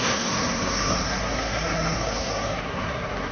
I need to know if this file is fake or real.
fake